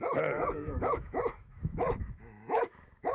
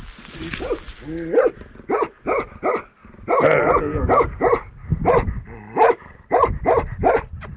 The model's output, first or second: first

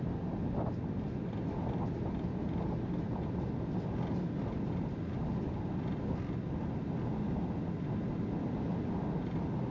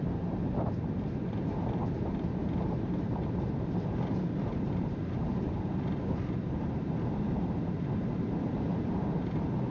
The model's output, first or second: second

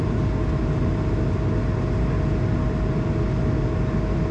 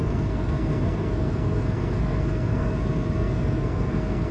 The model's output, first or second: second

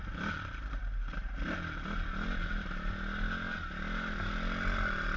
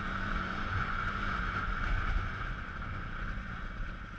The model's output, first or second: second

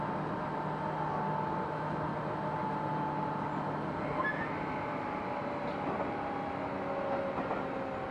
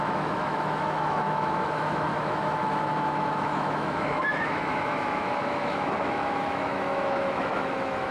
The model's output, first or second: second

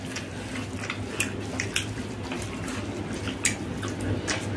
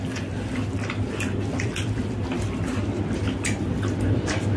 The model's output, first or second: second